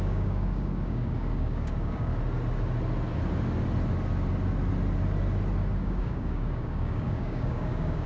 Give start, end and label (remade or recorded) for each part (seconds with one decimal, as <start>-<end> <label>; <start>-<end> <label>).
0.0-2.1 remade; 2.1-5.8 recorded; 5.8-8.1 remade